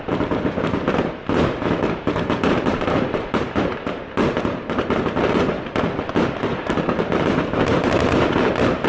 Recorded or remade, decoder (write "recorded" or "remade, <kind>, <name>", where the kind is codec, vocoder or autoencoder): remade, vocoder, BigVGAN v2